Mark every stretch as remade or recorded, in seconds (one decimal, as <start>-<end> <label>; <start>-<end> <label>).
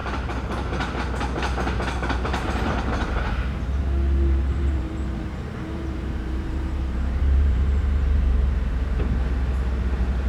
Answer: 0.0-2.3 recorded; 2.3-3.8 remade; 3.8-4.5 recorded; 4.5-9.0 remade; 9.0-10.3 recorded